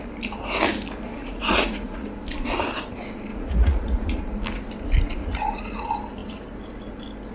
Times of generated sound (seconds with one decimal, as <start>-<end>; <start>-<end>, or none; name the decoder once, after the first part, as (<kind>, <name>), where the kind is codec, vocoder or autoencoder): 1.2-2.1 (vocoder, Vocos); 3.3-4.2; 5.2-5.8